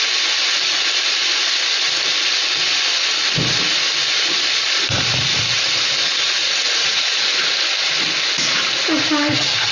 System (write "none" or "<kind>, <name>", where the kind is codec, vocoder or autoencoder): none